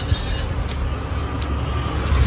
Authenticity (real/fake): real